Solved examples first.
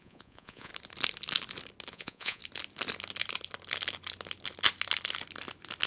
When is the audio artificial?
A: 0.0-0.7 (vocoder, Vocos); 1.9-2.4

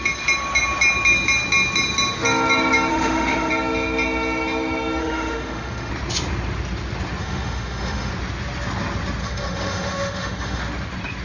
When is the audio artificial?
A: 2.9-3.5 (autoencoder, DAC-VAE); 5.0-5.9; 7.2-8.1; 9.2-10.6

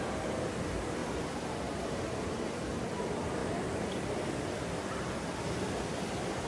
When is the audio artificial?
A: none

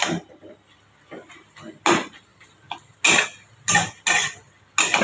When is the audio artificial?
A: none

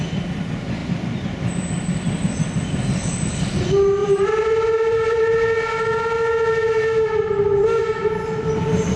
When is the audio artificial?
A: 0.8-1.6 (vocoder, BigVGAN v2); 4.0-5.2

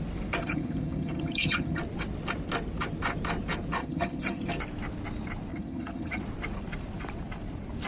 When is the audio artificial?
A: 0.4-1.8 (vocoder, HiFi-GAN); 3.8-4.5; 5.5-6.2

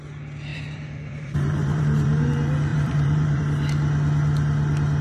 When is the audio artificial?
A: 0.5-2.3 (vocoder, BigVGAN v2); 2.7-3.4